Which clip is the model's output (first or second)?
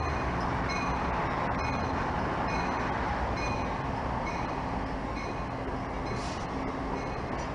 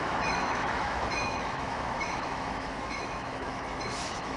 second